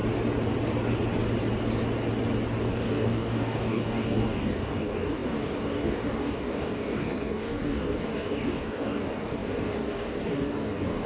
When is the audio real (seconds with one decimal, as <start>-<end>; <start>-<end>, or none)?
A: 0.0-2.6